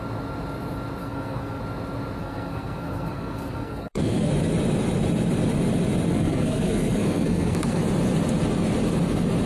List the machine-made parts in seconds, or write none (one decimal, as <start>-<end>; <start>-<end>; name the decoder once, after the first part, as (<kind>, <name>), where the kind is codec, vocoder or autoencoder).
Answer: 1.0-1.6 (codec, SNAC); 2.2-4.3; 6.1-7.8